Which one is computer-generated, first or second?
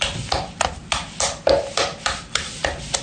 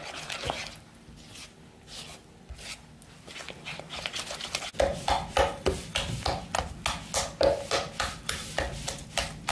first